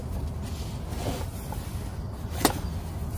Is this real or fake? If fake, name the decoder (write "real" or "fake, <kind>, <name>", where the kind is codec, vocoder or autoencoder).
real